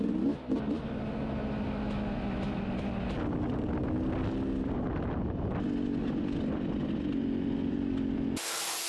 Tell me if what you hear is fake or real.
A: real